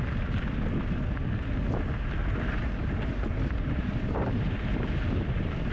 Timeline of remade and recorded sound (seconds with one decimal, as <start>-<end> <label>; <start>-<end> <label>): 0.0-2.2 recorded; 2.2-5.7 remade